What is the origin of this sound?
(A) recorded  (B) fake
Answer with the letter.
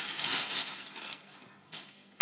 B